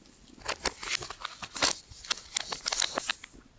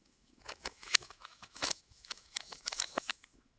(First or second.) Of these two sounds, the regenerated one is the second